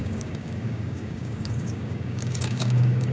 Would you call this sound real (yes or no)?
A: no